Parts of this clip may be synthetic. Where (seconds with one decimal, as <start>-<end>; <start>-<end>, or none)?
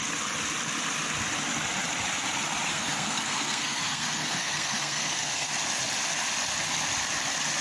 2.7-5.5